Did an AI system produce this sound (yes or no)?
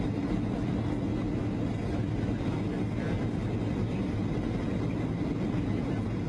no